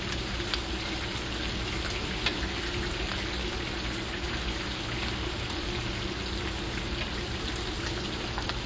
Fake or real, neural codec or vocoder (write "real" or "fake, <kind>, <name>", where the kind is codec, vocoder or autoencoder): real